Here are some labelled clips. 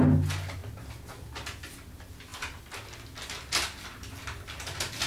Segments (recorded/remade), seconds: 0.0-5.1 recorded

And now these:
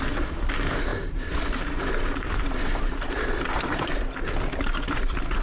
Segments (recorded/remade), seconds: 0.0-0.9 recorded; 0.9-4.0 remade; 4.0-5.4 recorded

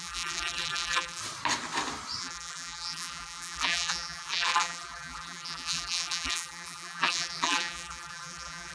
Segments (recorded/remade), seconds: 0.0-1.2 remade; 1.2-2.2 recorded; 2.2-8.7 remade

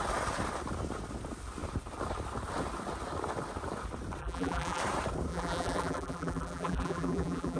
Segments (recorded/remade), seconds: 0.0-4.2 recorded; 4.2-4.8 remade; 4.8-5.3 recorded; 5.3-7.6 remade

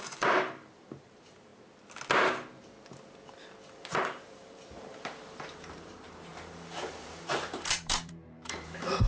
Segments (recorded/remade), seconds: 0.0-1.5 remade; 1.5-3.7 recorded; 3.7-9.1 remade